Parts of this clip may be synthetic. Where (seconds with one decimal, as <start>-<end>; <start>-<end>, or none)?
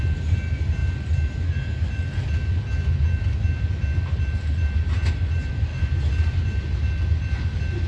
none